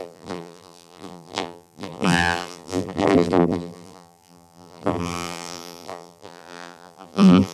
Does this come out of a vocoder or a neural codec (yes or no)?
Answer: yes